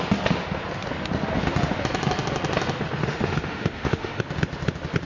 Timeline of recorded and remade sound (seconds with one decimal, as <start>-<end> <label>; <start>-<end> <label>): 0.0-3.0 recorded; 3.0-4.2 remade; 4.2-5.0 recorded